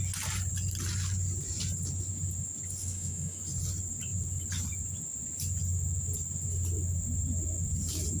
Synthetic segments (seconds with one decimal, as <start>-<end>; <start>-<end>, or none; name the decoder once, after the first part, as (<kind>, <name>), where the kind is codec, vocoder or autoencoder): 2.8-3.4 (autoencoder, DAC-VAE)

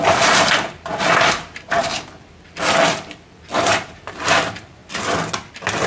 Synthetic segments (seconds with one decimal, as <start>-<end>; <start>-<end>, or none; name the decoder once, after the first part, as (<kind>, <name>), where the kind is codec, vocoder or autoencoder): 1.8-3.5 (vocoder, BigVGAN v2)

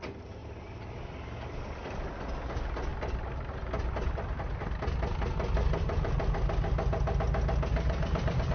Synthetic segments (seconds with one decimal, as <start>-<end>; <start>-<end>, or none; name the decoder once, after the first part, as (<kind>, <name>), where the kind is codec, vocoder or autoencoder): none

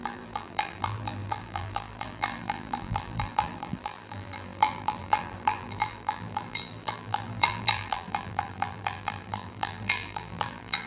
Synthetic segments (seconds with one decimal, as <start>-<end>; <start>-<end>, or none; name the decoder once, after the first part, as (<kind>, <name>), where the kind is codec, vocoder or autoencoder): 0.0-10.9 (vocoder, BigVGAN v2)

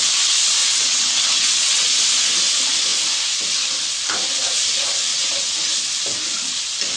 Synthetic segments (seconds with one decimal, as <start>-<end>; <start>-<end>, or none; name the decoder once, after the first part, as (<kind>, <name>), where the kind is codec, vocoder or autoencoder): 0.6-1.9 (vocoder, WaveNeXt); 5.1-5.7